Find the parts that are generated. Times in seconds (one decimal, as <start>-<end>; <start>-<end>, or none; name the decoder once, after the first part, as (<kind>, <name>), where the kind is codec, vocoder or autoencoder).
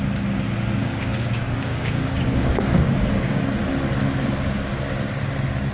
0.8-3.4 (codec, DAC)